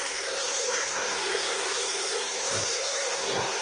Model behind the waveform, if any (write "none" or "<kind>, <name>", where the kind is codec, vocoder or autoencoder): codec, SNAC